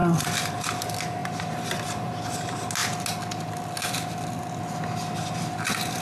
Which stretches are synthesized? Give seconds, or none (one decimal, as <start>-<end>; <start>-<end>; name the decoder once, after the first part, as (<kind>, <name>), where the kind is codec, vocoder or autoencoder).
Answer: 0.0-0.6 (vocoder, BigVGAN v2); 1.2-2.1

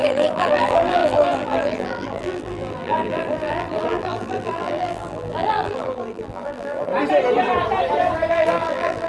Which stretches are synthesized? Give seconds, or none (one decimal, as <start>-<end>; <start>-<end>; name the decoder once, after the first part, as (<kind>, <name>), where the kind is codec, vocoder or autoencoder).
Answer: 0.0-6.9 (vocoder, BigVGAN v2); 8.3-9.1

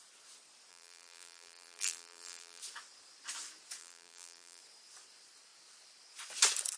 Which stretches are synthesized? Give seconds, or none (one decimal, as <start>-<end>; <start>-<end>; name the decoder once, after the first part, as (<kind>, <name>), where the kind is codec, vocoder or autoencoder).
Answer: 0.7-2.6 (vocoder, BigVGAN v2); 3.8-4.6

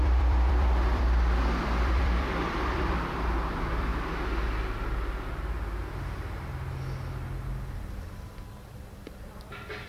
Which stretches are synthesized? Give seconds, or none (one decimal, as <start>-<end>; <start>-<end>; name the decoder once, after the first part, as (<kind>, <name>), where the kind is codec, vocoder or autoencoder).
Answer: 0.0-3.9 (vocoder, BigVGAN v2); 8.7-9.9

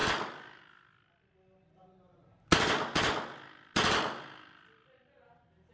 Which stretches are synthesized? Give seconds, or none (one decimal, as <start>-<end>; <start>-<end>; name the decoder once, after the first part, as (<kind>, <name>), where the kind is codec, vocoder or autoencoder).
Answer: none

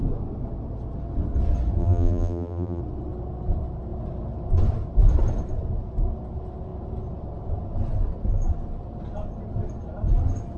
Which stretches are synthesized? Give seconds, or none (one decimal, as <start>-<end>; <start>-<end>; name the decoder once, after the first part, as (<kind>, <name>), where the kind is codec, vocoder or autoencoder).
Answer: 1.8-2.8 (vocoder, BigVGAN v2)

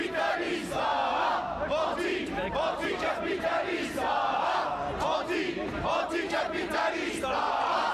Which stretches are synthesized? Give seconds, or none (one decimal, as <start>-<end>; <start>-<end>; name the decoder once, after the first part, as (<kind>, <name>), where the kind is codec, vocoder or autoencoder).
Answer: 0.0-0.6 (vocoder, BigVGAN v2); 1.7-4.8; 6.9-7.9